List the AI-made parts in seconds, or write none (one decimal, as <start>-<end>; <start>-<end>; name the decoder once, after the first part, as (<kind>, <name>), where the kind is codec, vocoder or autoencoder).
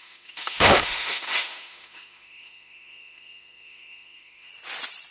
0.0-4.5 (autoencoder, DAC-VAE)